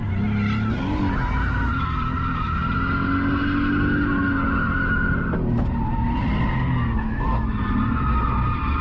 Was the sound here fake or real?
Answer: real